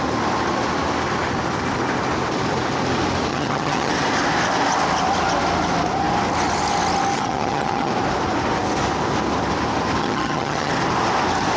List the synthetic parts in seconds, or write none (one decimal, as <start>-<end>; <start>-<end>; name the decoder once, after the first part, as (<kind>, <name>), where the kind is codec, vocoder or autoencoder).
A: 3.3-3.9 (vocoder, HiFi-GAN); 7.1-7.9; 10.0-10.7